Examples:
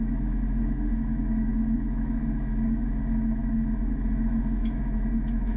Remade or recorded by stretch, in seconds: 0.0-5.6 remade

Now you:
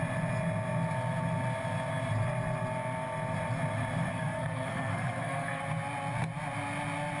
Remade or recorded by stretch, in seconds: 0.0-4.1 recorded; 4.1-5.6 remade; 5.6-7.2 recorded

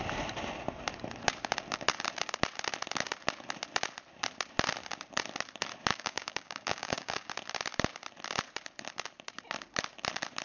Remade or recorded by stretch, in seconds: 0.0-5.9 recorded; 5.9-7.3 remade; 7.3-10.4 recorded

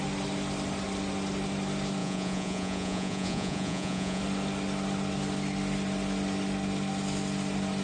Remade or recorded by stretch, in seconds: 0.0-2.0 recorded; 2.0-4.2 remade; 4.2-7.8 recorded

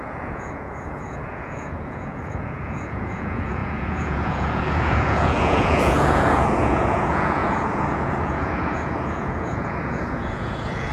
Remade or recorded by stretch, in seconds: 0.0-10.9 remade

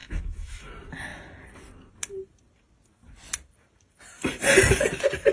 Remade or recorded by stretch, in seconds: 0.0-0.7 remade; 0.7-5.3 recorded

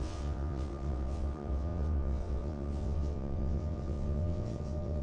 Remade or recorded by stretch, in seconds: 0.0-5.0 remade

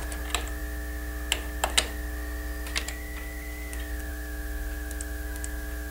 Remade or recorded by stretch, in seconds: 0.0-5.9 recorded